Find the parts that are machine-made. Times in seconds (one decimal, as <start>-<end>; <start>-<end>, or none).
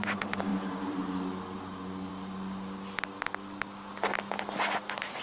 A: 0.5-2.1